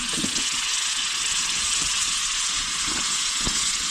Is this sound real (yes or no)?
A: no